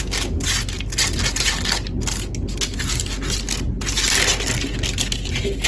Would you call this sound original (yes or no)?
yes